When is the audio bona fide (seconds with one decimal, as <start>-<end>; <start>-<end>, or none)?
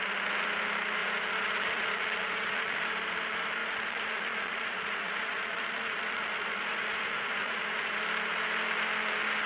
0.0-1.0; 2.8-3.6; 8.0-9.5